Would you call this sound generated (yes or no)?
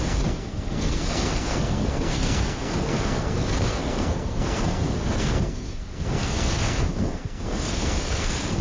yes